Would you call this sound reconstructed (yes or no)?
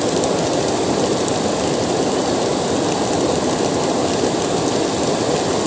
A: no